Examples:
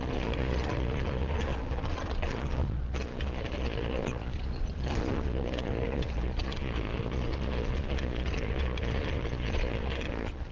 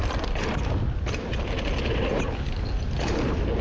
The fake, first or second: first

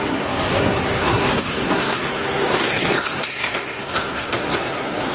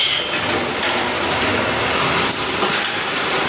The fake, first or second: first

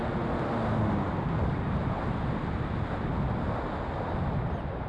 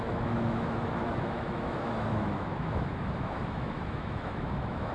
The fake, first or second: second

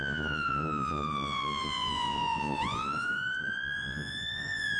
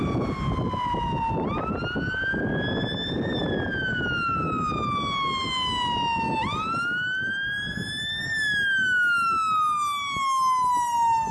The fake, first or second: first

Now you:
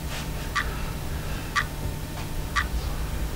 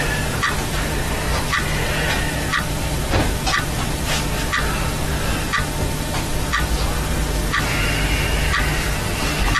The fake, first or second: first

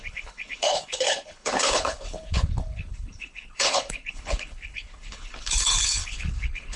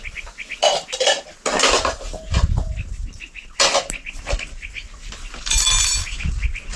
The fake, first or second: first